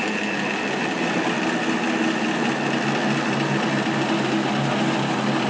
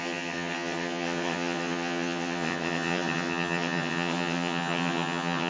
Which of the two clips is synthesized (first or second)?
second